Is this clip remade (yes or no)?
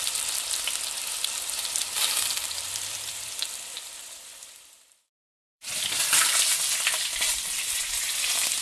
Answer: yes